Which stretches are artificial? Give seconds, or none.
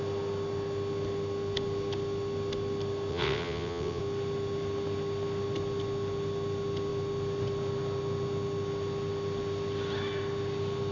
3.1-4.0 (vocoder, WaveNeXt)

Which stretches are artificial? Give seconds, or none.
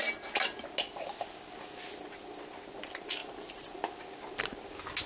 none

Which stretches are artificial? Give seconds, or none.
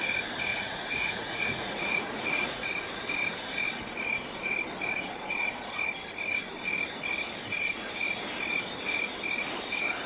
0.5-2.7 (vocoder, Vocos)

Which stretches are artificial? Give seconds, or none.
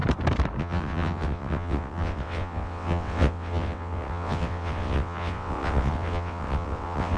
0.6-7.2 (vocoder, WaveNeXt)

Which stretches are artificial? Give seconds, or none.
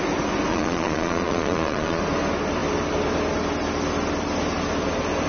0.5-2.0 (vocoder, Vocos)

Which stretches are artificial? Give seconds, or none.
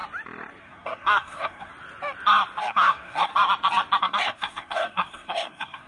0.6-1.7 (codec, SNAC); 2.6-3.3; 4.0-5.9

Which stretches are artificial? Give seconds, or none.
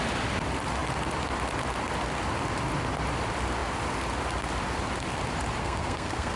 5.6-6.4 (codec, SNAC)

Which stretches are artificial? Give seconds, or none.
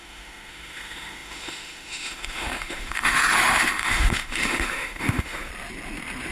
0.0-5.5 (autoencoder, DAC-VAE)